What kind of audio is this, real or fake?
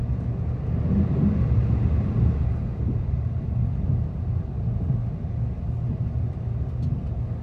real